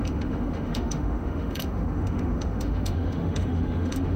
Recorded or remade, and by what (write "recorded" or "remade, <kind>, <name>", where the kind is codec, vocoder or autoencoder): remade, autoencoder, DAC-VAE